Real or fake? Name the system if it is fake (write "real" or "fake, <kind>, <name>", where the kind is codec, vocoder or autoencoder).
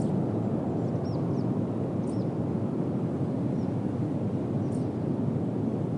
real